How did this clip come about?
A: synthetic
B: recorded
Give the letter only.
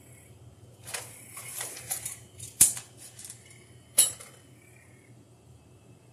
A